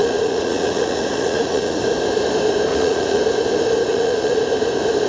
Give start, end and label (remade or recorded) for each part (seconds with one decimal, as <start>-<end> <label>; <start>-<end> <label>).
0.0-1.8 remade; 1.8-2.7 recorded; 2.7-3.2 remade; 3.2-3.9 recorded; 3.9-4.4 remade; 4.4-5.1 recorded